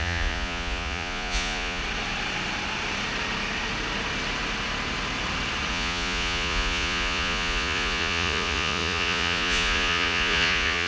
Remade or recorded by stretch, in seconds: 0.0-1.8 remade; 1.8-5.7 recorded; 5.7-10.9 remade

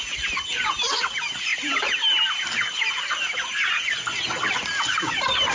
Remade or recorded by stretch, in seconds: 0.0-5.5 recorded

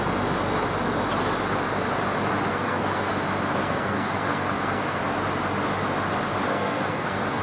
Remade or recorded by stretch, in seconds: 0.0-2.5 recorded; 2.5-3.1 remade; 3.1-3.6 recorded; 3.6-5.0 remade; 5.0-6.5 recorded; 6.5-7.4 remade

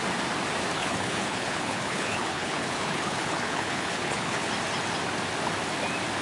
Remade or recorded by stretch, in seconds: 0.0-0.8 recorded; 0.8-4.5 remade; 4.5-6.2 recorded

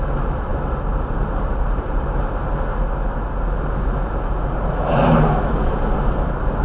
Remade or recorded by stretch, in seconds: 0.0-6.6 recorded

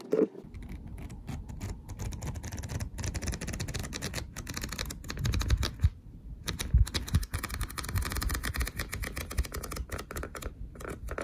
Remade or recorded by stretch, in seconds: 0.0-3.8 recorded; 3.8-8.5 remade; 8.5-11.2 recorded

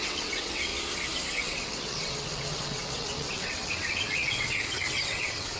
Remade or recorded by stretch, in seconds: 0.0-0.7 remade; 0.7-1.3 recorded; 1.3-5.6 remade